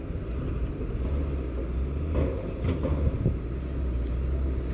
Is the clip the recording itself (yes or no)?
yes